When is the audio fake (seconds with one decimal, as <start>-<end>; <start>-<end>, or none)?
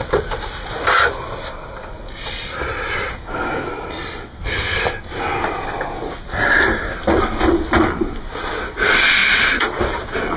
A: 3.1-3.7; 4.3-4.8